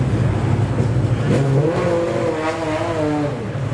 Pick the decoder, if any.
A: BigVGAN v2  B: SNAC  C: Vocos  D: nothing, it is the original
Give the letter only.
D